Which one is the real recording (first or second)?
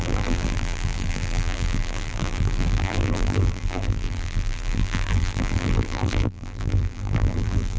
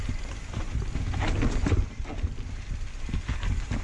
second